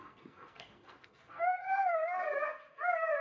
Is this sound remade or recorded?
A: remade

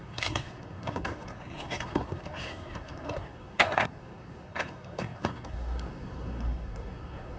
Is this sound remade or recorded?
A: remade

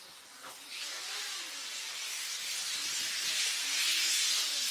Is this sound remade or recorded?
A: recorded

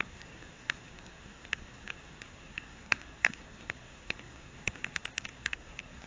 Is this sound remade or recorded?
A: remade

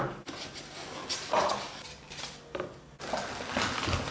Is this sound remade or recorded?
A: recorded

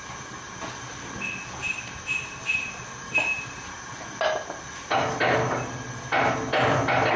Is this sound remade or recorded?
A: recorded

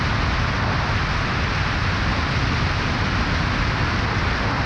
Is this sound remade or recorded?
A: recorded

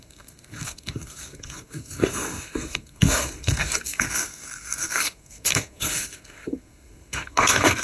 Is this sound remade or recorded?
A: remade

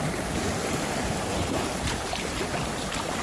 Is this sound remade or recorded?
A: recorded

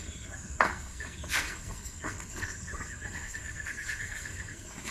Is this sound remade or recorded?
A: remade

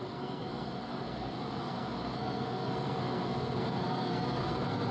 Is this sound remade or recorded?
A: remade